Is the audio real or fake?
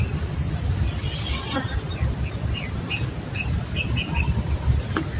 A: real